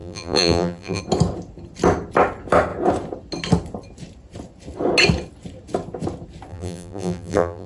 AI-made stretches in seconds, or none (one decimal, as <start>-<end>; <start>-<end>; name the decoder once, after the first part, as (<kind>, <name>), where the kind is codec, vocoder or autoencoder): 0.0-1.0 (vocoder, BigVGAN v2); 6.5-7.7